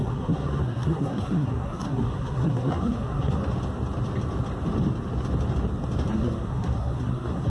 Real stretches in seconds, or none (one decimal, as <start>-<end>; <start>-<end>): 3.4-6.1